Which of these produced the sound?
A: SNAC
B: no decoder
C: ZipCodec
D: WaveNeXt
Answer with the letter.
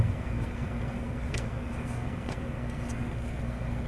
A